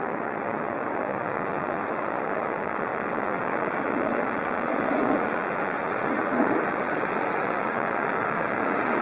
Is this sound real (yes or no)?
no